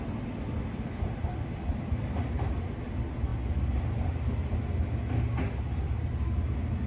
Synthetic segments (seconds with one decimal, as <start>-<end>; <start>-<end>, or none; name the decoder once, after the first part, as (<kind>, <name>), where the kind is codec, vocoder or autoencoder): none